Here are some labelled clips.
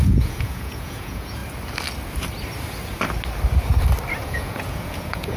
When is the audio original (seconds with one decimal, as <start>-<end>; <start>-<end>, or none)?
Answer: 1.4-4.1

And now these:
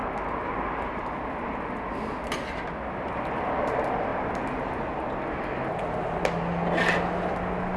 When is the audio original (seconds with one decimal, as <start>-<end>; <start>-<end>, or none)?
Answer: 0.0-7.8

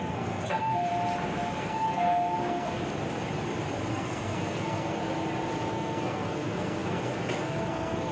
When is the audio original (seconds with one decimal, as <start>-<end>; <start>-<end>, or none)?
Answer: 0.9-1.6; 2.8-3.9; 5.0-5.7